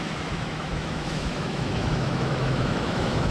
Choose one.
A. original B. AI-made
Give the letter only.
B